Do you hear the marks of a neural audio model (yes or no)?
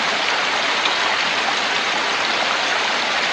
no